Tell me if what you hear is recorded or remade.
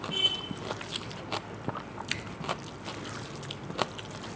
recorded